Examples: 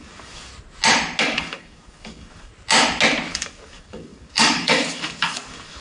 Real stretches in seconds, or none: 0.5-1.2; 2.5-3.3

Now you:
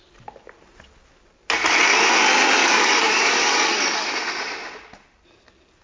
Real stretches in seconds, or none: 0.0-2.6; 4.1-5.8